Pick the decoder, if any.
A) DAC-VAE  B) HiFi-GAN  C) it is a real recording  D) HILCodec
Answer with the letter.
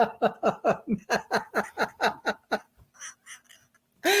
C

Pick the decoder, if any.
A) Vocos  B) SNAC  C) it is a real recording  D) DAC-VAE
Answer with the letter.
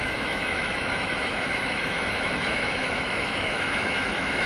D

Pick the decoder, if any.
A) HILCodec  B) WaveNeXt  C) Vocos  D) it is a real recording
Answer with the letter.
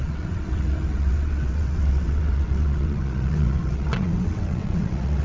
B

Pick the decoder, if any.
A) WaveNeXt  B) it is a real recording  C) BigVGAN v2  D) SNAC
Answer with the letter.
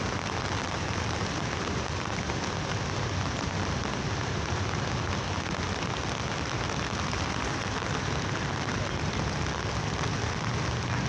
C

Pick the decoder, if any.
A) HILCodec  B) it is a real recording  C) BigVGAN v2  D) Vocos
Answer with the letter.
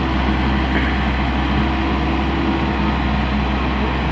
B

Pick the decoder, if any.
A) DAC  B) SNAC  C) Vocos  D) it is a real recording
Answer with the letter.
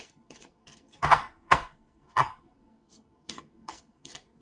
B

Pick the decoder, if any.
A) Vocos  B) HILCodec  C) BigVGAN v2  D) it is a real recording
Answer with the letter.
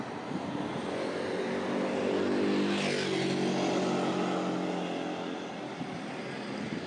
D